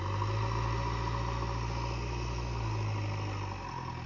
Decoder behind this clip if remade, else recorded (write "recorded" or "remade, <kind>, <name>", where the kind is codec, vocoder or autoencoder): recorded